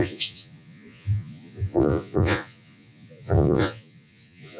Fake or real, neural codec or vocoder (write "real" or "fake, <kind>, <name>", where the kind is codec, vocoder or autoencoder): fake, vocoder, Vocos